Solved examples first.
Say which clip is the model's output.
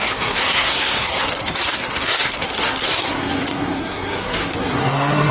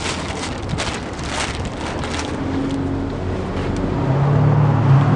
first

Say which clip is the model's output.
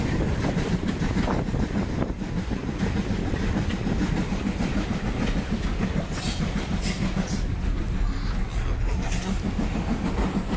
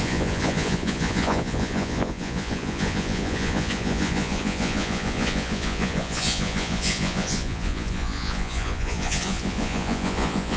second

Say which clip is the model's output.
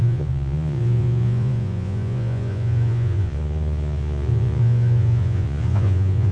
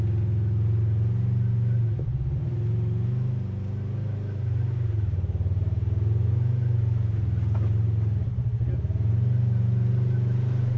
first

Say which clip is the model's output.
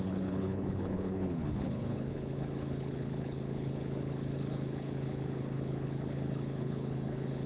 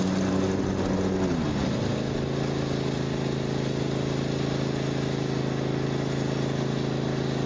first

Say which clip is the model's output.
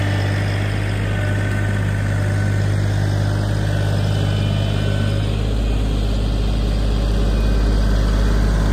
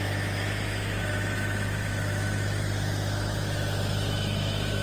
second